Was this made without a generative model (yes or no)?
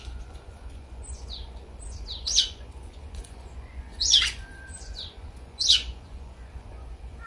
no